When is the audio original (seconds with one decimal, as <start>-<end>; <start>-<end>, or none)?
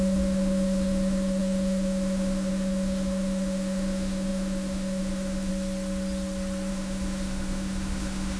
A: 5.5-6.7